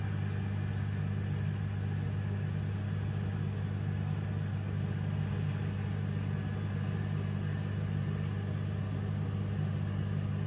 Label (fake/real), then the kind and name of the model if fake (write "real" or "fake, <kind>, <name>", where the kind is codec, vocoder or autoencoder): real